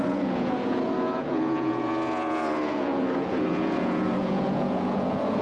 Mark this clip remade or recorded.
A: remade